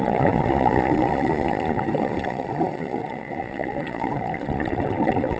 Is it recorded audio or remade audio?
remade